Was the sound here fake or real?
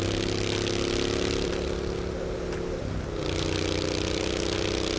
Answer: real